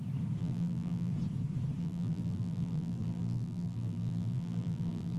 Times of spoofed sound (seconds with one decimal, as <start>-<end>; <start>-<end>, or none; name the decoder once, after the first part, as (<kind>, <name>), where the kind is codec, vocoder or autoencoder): 0.4-1.1 (vocoder, BigVGAN v2); 1.8-5.2